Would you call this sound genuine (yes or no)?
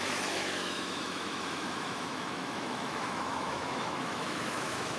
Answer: no